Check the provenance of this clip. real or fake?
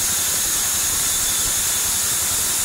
real